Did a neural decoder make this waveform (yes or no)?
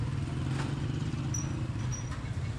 no